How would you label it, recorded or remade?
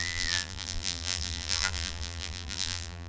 remade